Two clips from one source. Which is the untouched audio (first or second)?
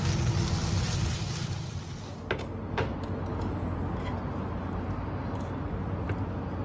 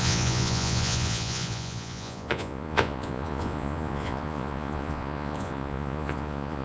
first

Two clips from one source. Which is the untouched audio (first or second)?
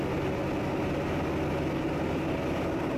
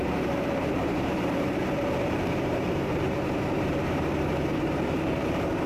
first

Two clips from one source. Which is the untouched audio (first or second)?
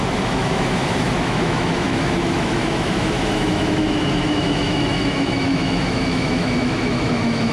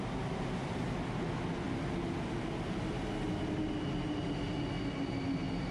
second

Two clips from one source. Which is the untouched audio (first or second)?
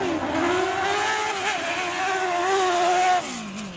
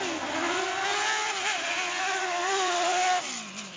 first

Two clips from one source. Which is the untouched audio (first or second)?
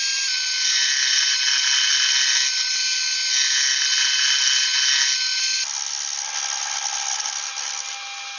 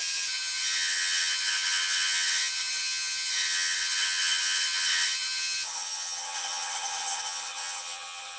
first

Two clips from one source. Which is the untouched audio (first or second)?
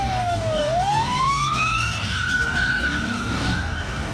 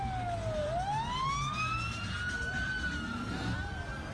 second